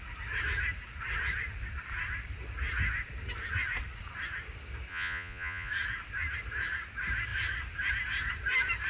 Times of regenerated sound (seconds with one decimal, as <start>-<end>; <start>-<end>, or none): 4.9-5.7